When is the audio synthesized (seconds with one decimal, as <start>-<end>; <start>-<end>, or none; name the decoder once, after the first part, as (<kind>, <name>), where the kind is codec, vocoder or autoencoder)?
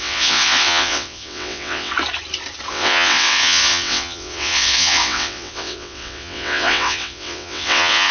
0.0-1.9 (vocoder, WaveNeXt); 2.7-8.1